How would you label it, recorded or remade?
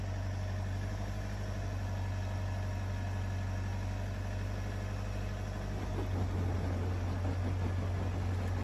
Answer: recorded